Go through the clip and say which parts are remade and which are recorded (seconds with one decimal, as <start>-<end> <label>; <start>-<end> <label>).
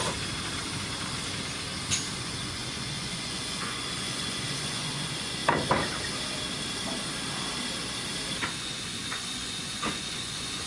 0.0-2.2 recorded; 2.2-5.4 remade; 5.4-8.6 recorded; 8.6-10.7 remade